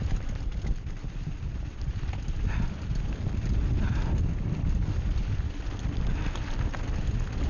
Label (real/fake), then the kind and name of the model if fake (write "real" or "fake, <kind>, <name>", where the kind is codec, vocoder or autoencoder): real